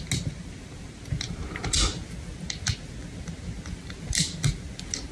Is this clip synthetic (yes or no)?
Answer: no